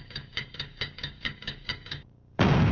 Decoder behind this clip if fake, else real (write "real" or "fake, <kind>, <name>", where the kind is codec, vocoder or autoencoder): fake, codec, DAC